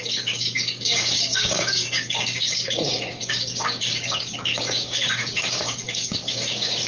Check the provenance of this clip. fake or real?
fake